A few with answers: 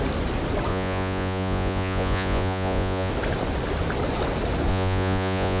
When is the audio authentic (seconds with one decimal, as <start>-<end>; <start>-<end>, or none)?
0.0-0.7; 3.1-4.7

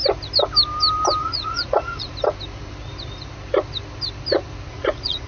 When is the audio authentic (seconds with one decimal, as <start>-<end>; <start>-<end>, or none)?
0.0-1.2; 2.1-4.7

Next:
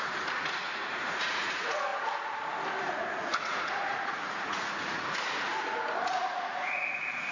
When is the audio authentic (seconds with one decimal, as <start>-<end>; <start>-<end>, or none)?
1.9-2.9; 5.5-6.1

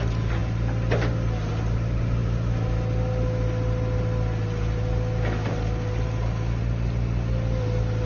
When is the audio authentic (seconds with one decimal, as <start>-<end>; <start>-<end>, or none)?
0.0-8.1